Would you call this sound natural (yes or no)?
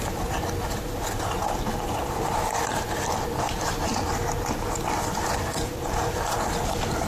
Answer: yes